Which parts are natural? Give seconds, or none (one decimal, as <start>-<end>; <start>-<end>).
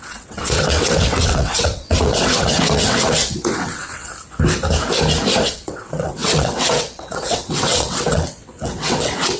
4.1-5.4